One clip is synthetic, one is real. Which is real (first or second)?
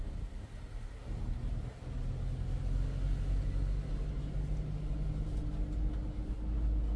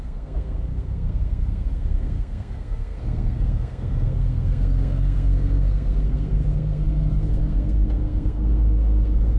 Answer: first